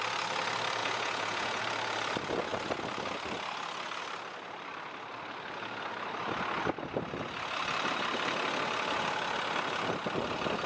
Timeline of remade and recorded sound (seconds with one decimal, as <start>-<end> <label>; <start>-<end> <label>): 0.0-0.8 recorded; 0.8-1.6 remade; 1.6-10.7 recorded